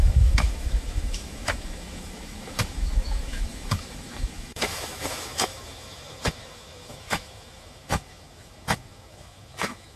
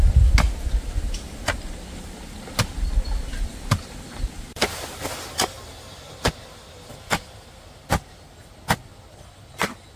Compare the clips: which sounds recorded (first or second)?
second